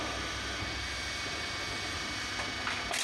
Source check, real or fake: real